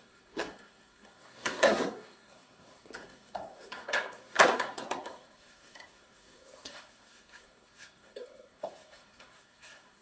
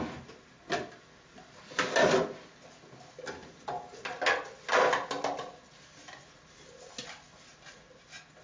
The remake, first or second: first